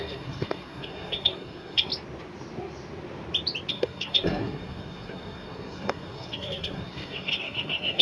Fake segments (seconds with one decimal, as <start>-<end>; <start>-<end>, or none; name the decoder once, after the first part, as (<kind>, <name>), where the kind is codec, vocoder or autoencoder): 0.0-1.9 (codec, SNAC); 3.7-8.0